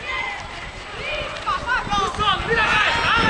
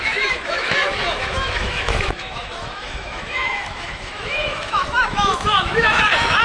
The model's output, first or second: second